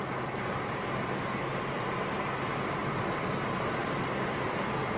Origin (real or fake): real